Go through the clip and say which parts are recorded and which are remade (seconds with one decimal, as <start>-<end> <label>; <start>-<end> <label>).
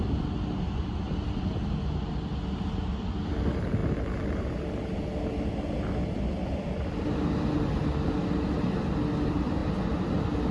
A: 0.0-10.5 recorded